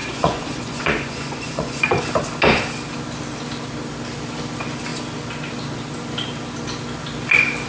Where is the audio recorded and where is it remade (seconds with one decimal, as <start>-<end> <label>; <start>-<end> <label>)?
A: 0.0-2.0 remade; 2.0-7.7 recorded